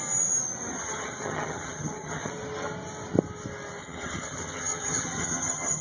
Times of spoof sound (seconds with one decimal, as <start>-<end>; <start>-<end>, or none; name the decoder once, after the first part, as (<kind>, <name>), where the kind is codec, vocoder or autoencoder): 0.7-2.3 (vocoder, HiFi-GAN); 3.8-5.8